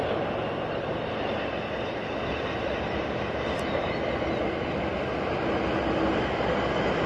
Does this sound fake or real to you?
real